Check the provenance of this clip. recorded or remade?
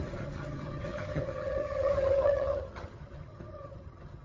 remade